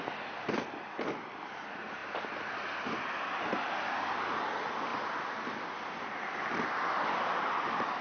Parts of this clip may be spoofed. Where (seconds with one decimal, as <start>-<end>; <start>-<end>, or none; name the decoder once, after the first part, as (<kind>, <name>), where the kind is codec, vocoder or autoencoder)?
none